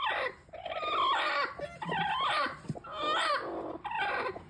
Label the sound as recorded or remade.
recorded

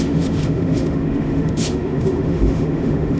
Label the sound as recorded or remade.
remade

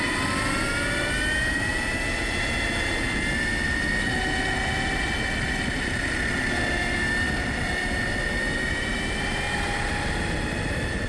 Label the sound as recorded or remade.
recorded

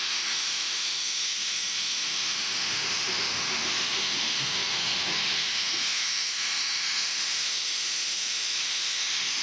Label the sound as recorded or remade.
remade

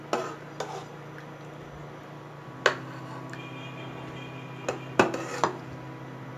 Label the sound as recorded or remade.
recorded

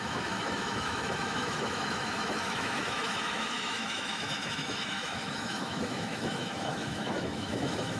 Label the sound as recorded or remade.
remade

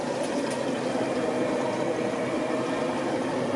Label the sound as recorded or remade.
recorded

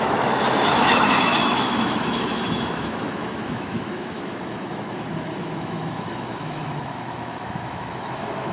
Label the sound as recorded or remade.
remade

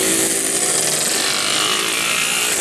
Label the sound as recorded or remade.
recorded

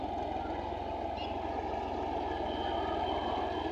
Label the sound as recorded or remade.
recorded